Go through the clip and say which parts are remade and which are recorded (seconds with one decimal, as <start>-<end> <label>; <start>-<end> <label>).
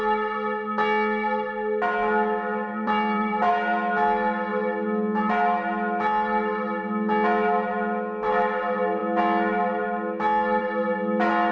0.0-2.7 recorded; 2.7-3.5 remade; 3.5-11.5 recorded